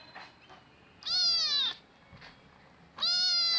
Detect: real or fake real